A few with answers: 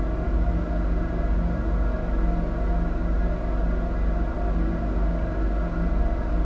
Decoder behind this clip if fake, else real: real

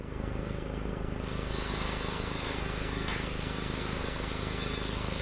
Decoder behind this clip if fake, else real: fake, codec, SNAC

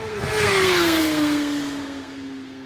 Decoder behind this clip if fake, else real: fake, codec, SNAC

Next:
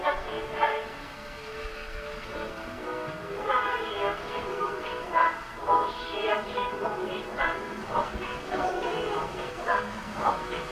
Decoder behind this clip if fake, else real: fake, codec, SNAC